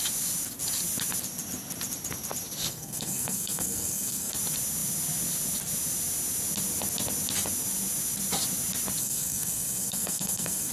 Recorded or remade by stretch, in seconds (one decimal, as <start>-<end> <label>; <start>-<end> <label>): 0.0-2.7 recorded; 2.7-4.3 remade; 4.3-9.0 recorded; 9.0-10.7 remade